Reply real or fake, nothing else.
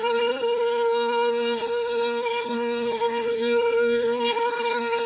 fake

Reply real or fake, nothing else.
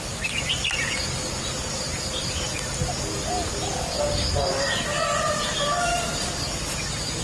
real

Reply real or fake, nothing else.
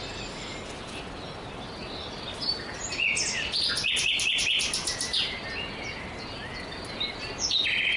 real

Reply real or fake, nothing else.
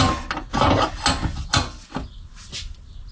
real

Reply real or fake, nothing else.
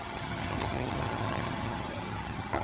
fake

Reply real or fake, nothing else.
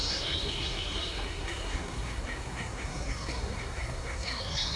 fake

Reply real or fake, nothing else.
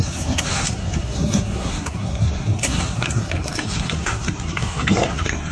fake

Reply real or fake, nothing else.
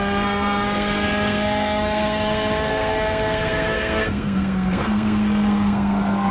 fake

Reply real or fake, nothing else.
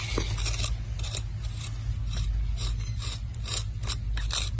real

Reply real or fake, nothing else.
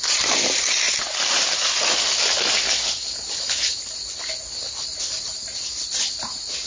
real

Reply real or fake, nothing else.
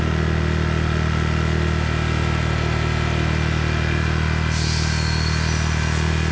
real